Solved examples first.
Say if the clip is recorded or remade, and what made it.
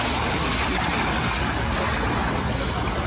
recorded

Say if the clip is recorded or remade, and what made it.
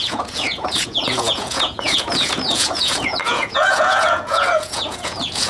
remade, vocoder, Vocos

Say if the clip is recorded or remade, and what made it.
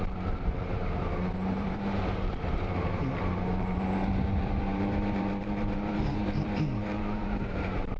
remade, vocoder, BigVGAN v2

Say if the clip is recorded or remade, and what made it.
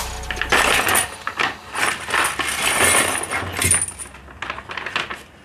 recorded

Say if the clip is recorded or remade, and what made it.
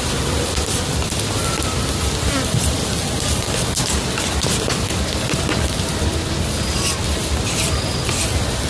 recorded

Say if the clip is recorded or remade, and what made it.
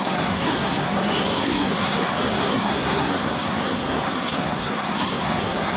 remade, codec, SNAC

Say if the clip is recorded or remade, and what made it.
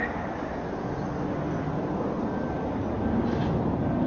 recorded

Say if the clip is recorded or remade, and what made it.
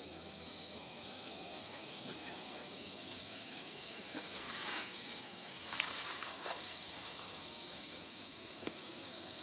remade, codec, SNAC